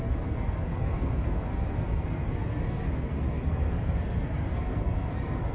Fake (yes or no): yes